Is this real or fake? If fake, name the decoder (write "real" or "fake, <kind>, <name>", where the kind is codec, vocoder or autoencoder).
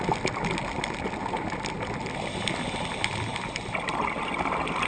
real